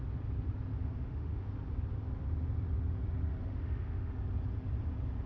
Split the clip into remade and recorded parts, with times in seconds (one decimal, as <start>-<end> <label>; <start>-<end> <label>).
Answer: 0.0-0.7 recorded; 0.7-1.5 remade; 1.5-3.4 recorded; 3.4-4.1 remade; 4.1-5.3 recorded